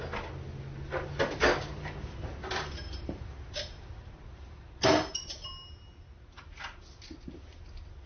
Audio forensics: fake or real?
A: real